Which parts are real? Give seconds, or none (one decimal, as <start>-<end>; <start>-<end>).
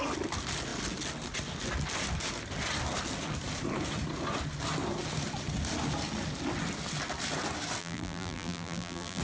0.0-7.8